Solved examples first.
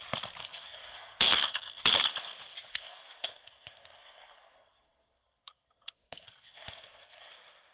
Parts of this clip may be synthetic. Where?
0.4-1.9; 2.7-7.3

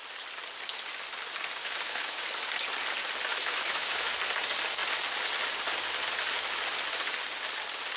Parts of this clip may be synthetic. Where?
1.6-2.2; 3.3-4.1